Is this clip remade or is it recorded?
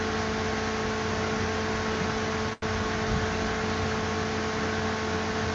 recorded